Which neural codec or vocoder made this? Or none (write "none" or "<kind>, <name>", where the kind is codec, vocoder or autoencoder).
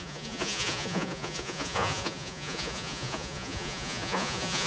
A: vocoder, Vocos